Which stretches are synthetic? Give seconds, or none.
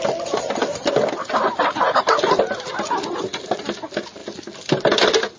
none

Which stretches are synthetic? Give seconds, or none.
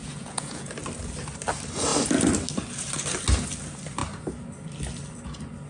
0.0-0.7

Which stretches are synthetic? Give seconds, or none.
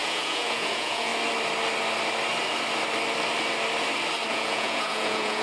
0.0-1.1; 4.3-5.4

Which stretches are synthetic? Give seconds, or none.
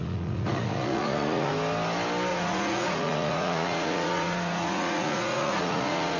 0.0-1.5; 2.3-6.2